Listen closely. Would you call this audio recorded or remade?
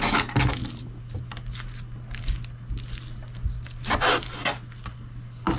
recorded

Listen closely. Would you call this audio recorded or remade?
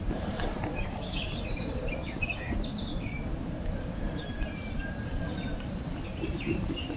remade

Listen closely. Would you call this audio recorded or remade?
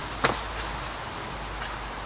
recorded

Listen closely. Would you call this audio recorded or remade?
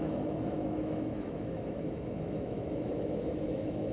remade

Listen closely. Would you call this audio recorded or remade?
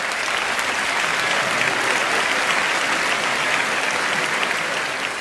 recorded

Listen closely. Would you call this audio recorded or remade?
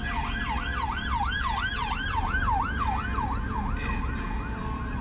recorded